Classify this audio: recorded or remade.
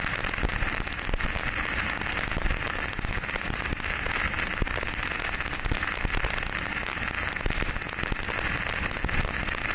recorded